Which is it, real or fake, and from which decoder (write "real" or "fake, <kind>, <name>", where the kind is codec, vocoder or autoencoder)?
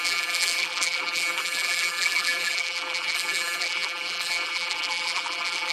fake, vocoder, BigVGAN v2